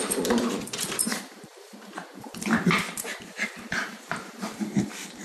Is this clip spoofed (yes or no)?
yes